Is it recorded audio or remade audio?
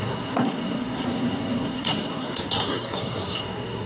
remade